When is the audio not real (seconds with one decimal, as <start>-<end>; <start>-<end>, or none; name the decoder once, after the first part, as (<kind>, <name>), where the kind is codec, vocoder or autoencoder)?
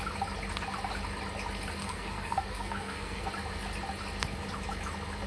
1.8-3.3 (codec, SNAC)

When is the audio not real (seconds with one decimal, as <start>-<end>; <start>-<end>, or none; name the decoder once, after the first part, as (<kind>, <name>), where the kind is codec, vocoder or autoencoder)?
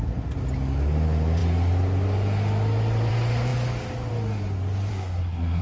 4.9-5.6 (codec, SNAC)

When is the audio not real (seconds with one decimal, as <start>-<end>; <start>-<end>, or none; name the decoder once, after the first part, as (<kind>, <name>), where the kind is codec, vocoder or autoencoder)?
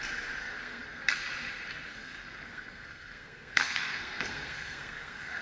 0.4-1.0 (codec, SNAC); 1.9-5.4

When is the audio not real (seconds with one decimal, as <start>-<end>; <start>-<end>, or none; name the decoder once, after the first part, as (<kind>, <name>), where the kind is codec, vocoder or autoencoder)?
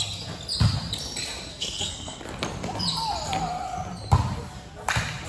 1.5-2.2 (codec, SNAC)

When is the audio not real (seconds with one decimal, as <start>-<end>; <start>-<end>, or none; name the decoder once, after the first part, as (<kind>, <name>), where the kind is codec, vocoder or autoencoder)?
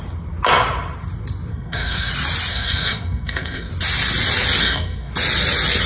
1.5-2.1 (codec, SNAC); 2.5-3.7; 4.6-5.1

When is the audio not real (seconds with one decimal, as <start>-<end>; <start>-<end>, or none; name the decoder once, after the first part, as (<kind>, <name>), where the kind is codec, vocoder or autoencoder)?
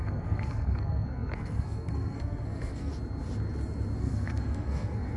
0.0-2.9 (codec, SNAC); 4.0-5.2